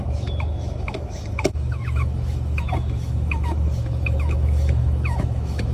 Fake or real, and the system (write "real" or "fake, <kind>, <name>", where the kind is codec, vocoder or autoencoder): fake, autoencoder, DAC-VAE